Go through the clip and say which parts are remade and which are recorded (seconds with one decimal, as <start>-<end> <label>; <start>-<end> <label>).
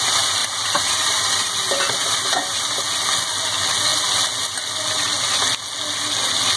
0.0-0.4 recorded; 0.4-2.8 remade; 2.8-6.6 recorded